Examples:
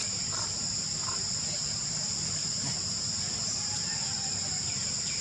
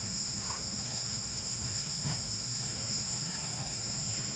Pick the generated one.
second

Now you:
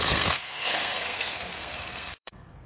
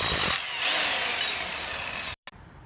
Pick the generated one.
first